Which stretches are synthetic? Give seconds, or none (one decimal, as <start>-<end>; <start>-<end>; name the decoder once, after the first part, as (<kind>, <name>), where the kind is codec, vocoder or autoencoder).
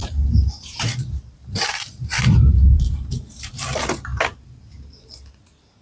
0.0-3.5 (vocoder, BigVGAN v2)